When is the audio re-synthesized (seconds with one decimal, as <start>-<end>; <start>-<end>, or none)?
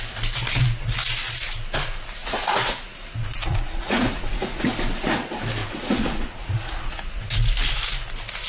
2.2-4.7; 5.6-7.3